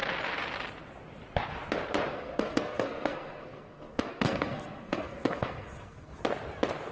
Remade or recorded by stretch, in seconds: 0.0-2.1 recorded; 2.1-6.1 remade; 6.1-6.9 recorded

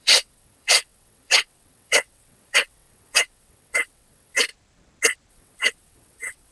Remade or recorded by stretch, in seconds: 0.0-4.5 remade; 4.5-5.3 recorded; 5.3-6.5 remade